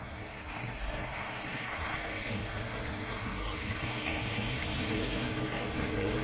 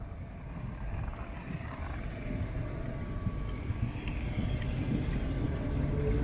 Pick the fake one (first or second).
first